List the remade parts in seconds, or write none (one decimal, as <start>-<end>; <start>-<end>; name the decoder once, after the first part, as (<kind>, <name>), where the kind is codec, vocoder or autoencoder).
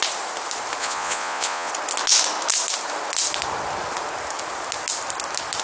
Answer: 0.8-1.7 (vocoder, Vocos)